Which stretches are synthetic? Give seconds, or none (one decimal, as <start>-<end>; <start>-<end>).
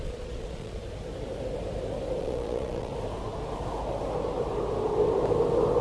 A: 0.0-0.8; 2.2-2.9